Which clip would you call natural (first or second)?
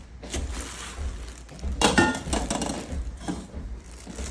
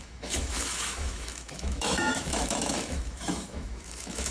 first